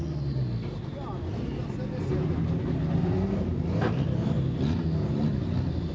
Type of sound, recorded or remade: recorded